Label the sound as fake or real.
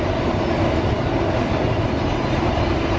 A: real